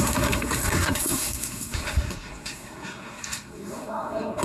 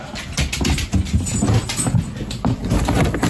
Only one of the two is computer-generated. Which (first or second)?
first